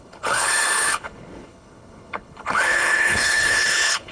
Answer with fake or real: fake